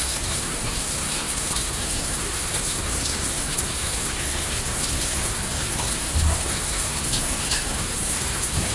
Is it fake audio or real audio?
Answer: fake